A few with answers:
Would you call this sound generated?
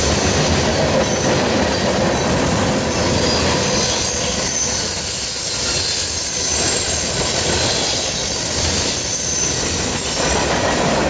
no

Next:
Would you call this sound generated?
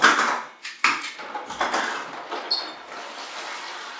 no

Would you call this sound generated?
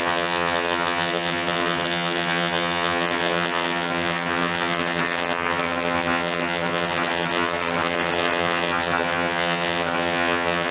yes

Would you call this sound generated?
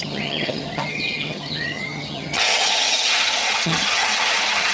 yes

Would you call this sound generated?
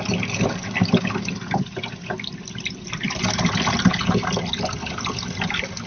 no